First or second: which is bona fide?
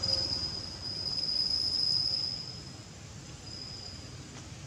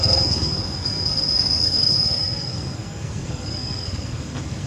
first